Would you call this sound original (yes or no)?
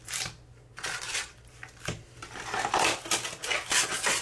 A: yes